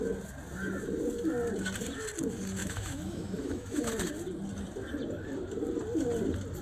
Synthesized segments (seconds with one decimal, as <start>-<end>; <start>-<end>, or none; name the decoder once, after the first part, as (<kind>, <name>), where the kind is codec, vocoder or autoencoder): 2.6-3.9 (autoencoder, DAC-VAE)